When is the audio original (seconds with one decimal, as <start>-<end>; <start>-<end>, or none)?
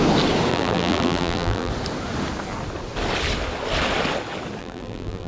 0.0-0.5; 1.7-4.6